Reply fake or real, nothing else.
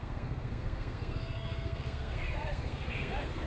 fake